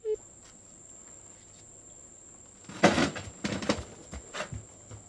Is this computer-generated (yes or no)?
no